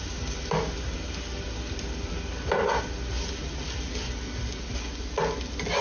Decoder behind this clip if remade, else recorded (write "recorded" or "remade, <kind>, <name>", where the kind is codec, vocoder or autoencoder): recorded